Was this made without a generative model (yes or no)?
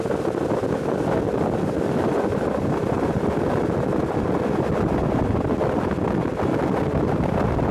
yes